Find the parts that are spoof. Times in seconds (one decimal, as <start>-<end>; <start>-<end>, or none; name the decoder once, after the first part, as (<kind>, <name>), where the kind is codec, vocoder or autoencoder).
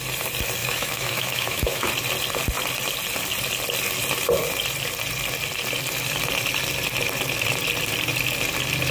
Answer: 0.6-1.9 (autoencoder, DAC-VAE)